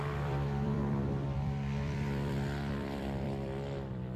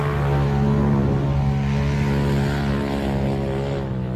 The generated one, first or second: first